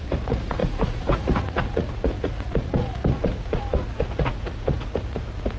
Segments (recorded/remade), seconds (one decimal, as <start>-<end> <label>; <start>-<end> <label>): 0.0-5.6 remade